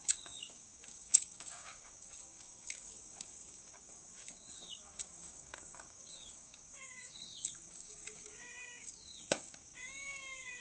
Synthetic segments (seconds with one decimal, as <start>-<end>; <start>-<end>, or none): 0.0-10.6